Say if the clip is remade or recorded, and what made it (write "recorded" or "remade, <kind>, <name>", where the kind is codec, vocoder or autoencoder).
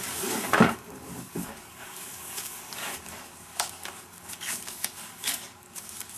remade, codec, DAC